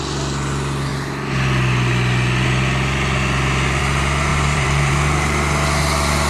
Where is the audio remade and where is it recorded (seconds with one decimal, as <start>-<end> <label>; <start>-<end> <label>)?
0.0-4.3 recorded; 4.3-4.9 remade; 4.9-6.3 recorded